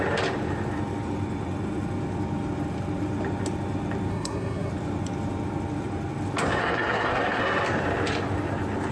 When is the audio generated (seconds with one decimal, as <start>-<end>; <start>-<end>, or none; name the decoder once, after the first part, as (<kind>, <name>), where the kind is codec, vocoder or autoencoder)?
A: 4.1-4.7 (codec, SNAC); 6.6-7.4